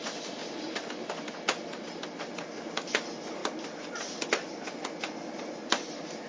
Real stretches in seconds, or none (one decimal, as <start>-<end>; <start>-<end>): 0.0-6.3